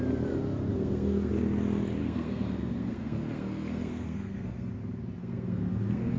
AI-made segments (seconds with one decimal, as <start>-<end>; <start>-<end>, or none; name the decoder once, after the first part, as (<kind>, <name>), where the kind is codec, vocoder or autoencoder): 0.7-1.3 (codec, SNAC); 2.0-4.7; 5.2-6.2